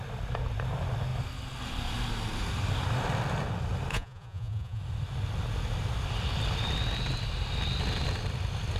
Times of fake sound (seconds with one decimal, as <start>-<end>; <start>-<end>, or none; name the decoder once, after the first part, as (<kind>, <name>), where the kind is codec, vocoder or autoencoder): 3.9-4.8 (vocoder, Vocos)